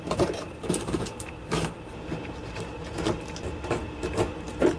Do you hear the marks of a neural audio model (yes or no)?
no